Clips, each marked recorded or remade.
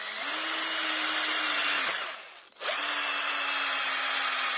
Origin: recorded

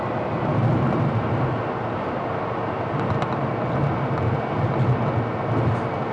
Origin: recorded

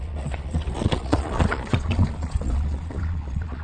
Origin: remade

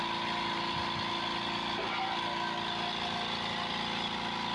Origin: recorded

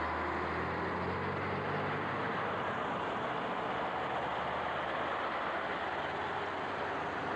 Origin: recorded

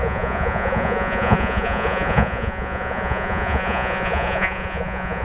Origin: remade